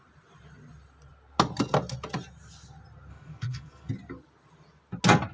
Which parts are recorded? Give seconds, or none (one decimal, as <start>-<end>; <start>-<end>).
0.0-3.1; 3.9-5.3